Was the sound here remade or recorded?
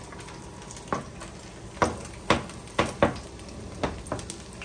recorded